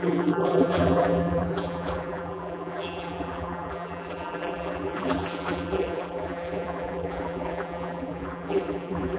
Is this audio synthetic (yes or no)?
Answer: yes